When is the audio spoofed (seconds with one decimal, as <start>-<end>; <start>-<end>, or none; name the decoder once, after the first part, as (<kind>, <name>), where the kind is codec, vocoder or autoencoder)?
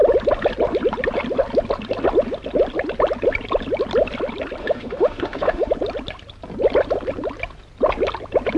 4.6-5.7 (autoencoder, DAC-VAE)